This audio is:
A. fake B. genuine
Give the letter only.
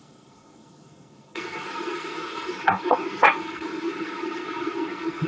A